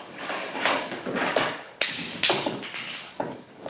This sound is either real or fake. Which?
fake